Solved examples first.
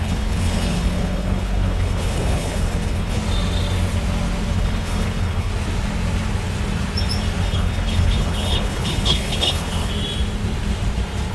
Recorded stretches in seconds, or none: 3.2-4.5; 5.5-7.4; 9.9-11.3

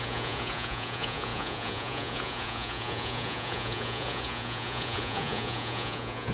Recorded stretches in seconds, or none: none

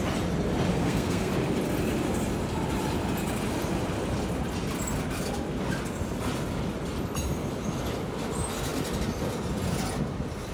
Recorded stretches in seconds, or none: 0.0-0.7; 1.3-10.5

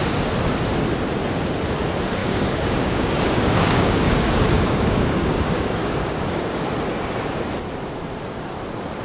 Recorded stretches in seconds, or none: 0.0-2.2; 6.6-9.0

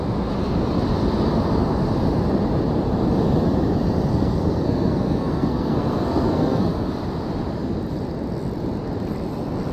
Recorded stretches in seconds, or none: 0.0-4.1; 6.9-9.7